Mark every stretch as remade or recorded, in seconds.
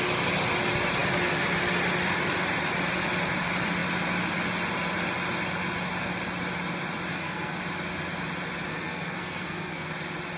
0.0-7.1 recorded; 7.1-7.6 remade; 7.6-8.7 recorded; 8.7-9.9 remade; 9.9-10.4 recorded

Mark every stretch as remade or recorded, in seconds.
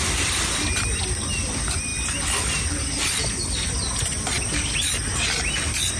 0.0-6.0 recorded